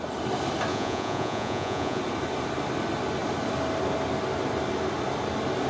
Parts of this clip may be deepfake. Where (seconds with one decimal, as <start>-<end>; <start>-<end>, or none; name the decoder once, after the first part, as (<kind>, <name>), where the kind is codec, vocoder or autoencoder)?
0.7-2.0 (vocoder, Vocos)